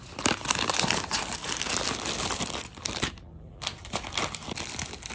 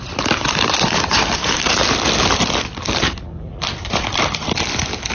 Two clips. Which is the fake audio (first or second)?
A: second